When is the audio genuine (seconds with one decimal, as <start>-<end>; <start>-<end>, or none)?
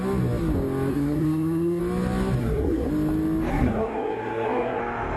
0.0-0.9; 1.8-2.4; 2.9-3.5; 4.8-5.2